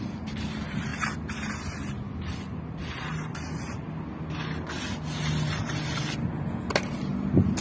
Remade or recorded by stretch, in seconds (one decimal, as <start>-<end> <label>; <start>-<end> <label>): 0.0-7.6 recorded